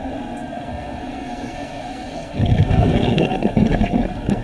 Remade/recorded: remade